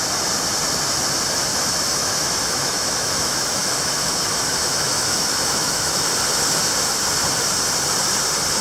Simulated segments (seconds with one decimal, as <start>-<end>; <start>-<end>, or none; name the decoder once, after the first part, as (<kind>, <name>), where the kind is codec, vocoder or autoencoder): 1.5-6.0 (autoencoder, DAC-VAE)